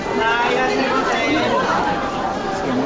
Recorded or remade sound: recorded